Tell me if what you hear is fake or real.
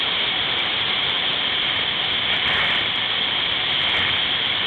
fake